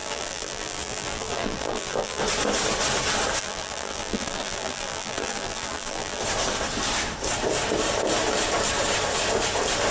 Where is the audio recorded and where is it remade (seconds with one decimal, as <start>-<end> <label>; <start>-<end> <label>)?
0.0-2.2 remade; 2.2-3.4 recorded; 3.4-6.2 remade; 6.2-9.9 recorded